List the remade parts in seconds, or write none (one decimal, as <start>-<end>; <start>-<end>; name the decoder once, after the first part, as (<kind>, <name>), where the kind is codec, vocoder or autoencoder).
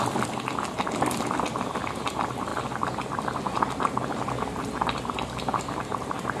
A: none